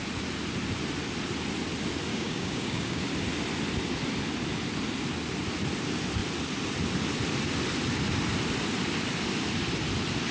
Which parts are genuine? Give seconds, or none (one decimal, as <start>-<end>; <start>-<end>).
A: 0.0-2.1; 3.0-10.3